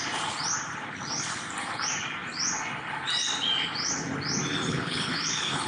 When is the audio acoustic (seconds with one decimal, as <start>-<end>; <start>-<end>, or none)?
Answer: 0.0-4.7